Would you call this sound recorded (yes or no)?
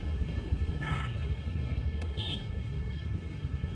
no